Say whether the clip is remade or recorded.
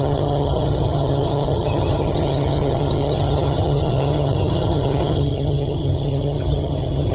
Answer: remade